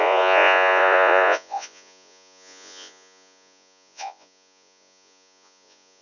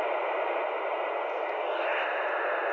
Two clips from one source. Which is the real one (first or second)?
second